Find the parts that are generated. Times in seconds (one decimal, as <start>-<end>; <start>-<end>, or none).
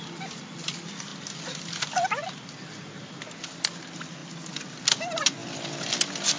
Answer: none